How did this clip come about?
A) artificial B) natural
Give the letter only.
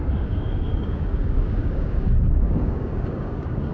A